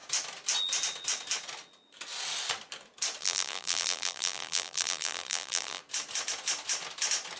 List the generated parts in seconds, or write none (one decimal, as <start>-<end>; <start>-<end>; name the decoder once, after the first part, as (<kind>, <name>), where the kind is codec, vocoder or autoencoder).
3.2-5.8 (vocoder, BigVGAN v2)